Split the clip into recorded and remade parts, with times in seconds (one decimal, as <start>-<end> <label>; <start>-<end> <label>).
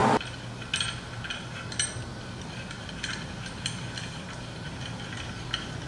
0.0-5.9 recorded